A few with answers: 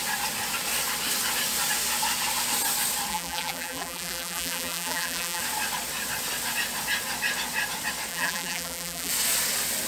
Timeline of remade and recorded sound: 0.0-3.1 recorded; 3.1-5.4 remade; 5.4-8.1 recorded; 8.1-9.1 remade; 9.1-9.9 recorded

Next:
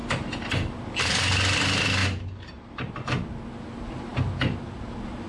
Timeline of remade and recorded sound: 0.0-5.3 recorded

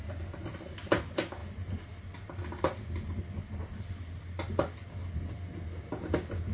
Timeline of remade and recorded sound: 0.0-6.5 recorded

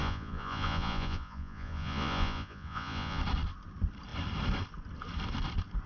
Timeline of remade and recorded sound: 0.0-3.2 remade; 3.2-5.9 recorded